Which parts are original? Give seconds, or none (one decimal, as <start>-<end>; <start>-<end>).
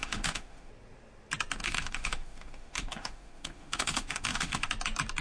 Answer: 0.7-1.6; 4.7-5.2